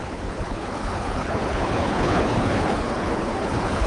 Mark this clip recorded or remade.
remade